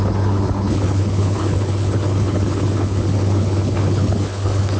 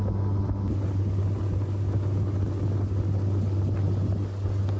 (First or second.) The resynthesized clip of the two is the first